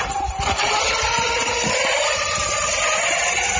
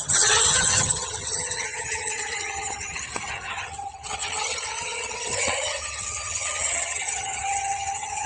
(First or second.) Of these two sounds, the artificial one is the second